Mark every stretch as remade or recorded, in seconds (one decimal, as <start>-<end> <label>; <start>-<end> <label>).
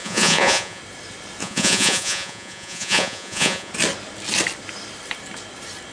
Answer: 0.0-0.8 remade; 0.8-1.4 recorded; 1.4-3.7 remade; 3.7-5.9 recorded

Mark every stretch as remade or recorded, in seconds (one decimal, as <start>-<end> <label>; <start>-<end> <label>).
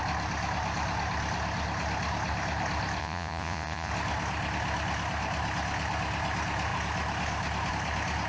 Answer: 0.0-3.0 recorded; 3.0-3.9 remade; 3.9-8.3 recorded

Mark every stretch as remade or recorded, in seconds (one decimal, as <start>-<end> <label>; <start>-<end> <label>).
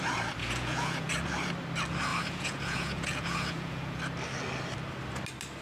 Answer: 0.0-0.4 recorded; 0.4-1.1 remade; 1.1-2.1 recorded; 2.1-4.0 remade; 4.0-5.6 recorded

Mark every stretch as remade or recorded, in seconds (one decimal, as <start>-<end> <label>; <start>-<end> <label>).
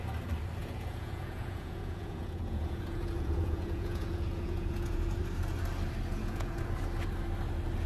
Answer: 0.0-0.6 recorded; 0.6-5.2 remade; 5.2-6.1 recorded; 6.1-6.6 remade; 6.6-7.9 recorded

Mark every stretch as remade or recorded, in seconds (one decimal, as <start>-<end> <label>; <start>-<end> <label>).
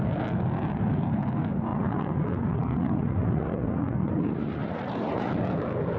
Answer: 0.0-1.7 recorded; 1.7-5.3 remade; 5.3-6.0 recorded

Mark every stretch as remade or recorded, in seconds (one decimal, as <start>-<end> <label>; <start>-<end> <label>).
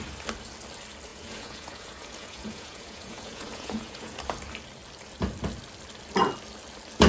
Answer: 0.0-1.1 recorded; 1.1-4.2 remade; 4.2-7.1 recorded